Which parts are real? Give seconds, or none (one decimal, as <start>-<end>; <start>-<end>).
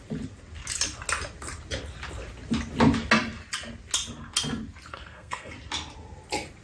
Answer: 0.0-4.9; 5.5-6.6